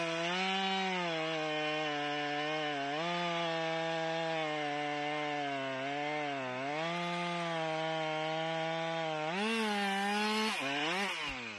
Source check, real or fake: real